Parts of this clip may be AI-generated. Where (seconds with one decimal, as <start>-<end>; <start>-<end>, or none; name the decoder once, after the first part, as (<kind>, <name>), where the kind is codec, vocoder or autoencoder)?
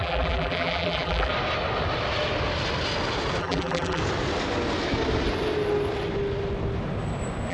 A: 0.0-1.3 (vocoder, BigVGAN v2); 3.4-4.0